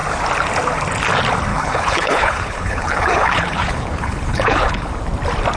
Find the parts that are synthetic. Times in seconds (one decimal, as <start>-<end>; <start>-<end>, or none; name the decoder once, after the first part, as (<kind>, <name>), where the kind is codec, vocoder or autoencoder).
1.5-4.9 (codec, HILCodec)